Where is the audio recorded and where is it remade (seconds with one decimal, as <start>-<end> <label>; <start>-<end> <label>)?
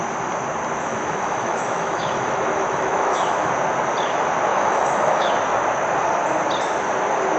0.0-0.9 recorded; 0.9-3.5 remade; 3.5-4.5 recorded; 4.5-5.3 remade; 5.3-7.4 recorded